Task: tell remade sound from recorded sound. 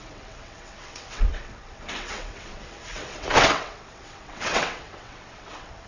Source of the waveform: remade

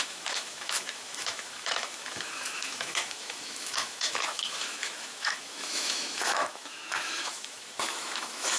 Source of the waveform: remade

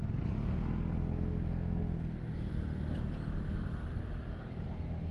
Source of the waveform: recorded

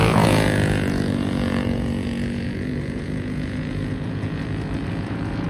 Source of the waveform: remade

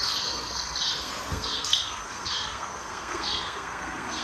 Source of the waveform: remade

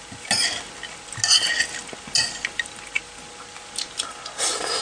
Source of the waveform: recorded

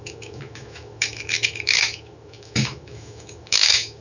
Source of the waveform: remade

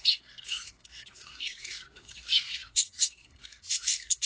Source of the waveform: remade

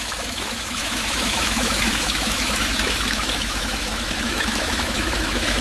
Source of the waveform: remade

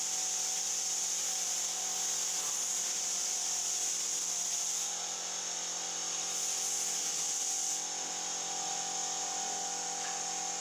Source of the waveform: recorded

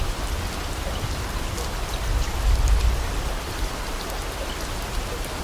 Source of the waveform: recorded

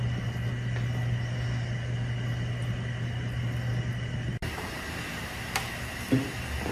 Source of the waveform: recorded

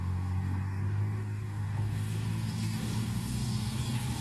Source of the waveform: remade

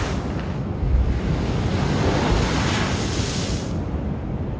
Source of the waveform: recorded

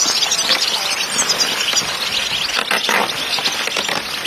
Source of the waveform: recorded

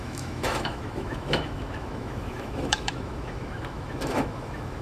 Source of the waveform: remade